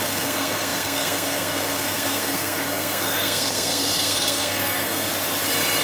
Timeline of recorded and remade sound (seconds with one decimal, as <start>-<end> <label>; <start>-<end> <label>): 0.0-5.1 remade; 5.1-5.8 recorded